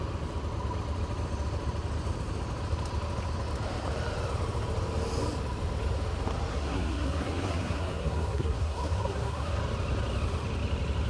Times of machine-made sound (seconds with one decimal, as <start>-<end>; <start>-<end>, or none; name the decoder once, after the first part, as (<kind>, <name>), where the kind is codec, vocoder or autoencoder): 6.5-9.6 (codec, SNAC)